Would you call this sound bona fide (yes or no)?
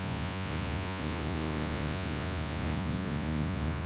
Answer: no